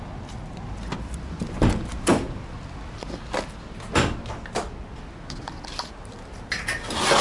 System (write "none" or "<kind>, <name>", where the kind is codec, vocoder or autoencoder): none